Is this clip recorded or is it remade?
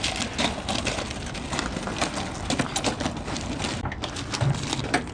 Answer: recorded